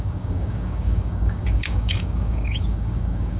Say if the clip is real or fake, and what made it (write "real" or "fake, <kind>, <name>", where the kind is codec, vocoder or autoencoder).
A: fake, codec, DAC